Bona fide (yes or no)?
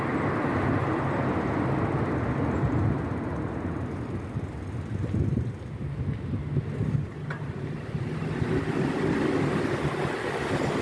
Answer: yes